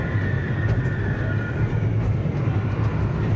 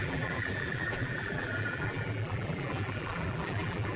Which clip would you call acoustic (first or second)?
first